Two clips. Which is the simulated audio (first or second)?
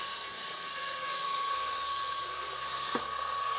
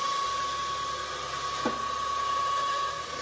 first